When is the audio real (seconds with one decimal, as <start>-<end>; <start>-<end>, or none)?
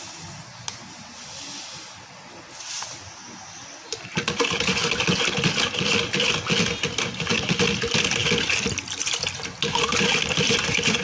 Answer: 0.0-0.5; 4.1-8.2; 10.3-11.0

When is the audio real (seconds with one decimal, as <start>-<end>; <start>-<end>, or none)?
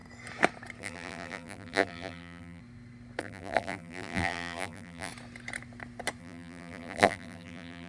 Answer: 0.0-0.8; 2.6-3.2; 5.1-6.2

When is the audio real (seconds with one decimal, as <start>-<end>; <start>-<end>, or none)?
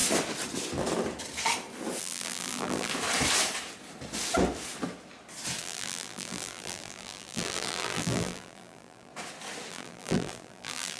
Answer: 0.0-2.0; 2.9-5.6; 9.1-9.7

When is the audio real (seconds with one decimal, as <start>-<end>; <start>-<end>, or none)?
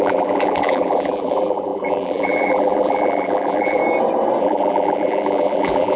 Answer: 3.8-4.4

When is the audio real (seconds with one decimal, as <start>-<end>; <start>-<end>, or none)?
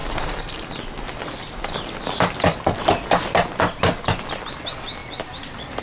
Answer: 2.8-5.8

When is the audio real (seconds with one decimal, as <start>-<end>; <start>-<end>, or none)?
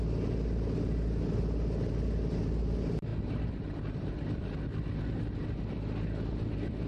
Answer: 0.0-3.1; 4.6-6.9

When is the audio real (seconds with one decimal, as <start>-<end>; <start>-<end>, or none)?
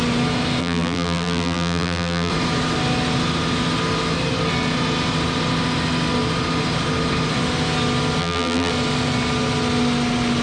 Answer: 0.0-0.6; 2.3-8.2; 8.7-10.4